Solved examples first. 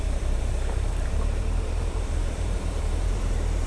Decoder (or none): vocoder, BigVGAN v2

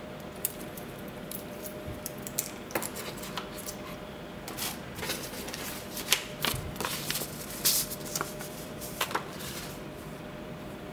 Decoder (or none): vocoder, BigVGAN v2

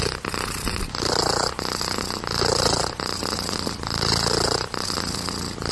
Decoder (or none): none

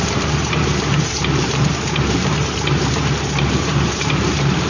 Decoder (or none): vocoder, BigVGAN v2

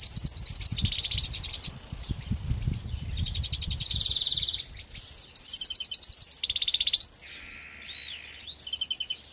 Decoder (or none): none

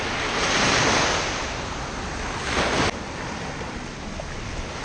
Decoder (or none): none